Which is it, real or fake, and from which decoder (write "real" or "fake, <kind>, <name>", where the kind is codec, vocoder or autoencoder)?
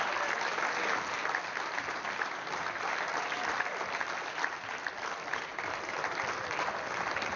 real